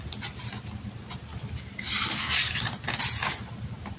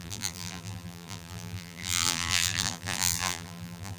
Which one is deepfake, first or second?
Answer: second